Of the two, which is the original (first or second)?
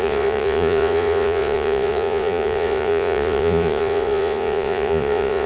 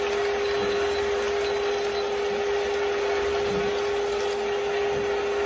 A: second